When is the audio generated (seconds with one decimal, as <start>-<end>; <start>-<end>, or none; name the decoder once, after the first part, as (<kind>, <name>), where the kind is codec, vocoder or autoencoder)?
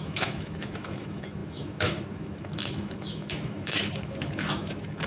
0.0-5.1 (autoencoder, DAC-VAE)